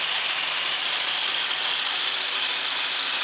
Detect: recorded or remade recorded